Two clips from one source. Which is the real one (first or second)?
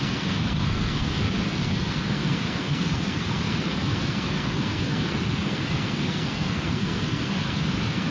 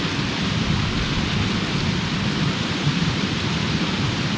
second